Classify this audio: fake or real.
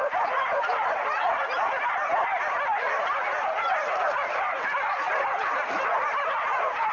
real